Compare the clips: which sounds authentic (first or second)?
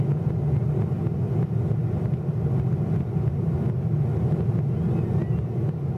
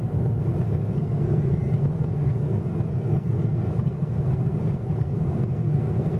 first